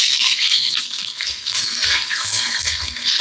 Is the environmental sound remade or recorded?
remade